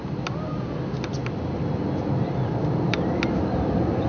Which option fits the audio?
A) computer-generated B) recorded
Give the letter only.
B